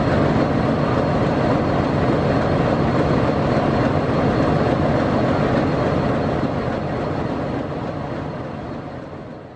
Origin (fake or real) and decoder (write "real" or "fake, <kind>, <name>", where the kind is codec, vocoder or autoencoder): real